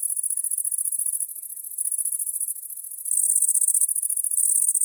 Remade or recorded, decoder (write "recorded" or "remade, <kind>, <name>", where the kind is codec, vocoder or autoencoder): recorded